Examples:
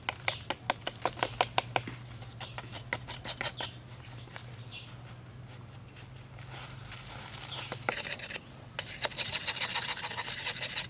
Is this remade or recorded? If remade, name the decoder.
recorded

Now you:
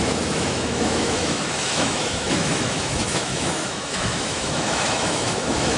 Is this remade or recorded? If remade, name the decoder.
remade, autoencoder, DAC-VAE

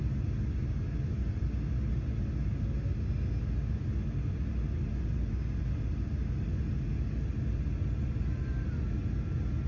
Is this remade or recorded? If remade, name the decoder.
recorded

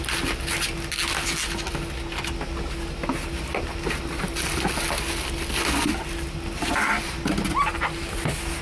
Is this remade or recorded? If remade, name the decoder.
recorded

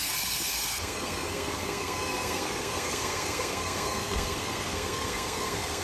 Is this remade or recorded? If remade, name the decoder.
remade, codec, SNAC